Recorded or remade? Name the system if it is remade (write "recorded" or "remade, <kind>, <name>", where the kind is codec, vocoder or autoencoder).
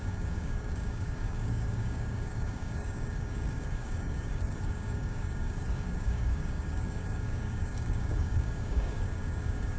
remade, codec, DAC